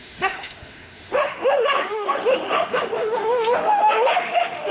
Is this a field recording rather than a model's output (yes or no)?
no